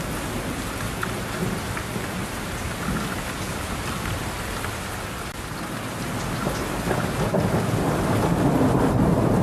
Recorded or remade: recorded